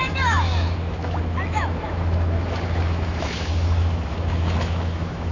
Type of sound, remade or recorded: remade